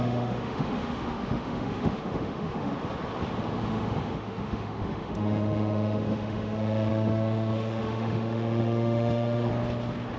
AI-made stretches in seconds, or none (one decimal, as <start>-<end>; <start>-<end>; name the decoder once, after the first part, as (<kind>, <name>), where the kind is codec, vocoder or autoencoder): 0.0-2.7 (autoencoder, DAC-VAE); 3.7-9.5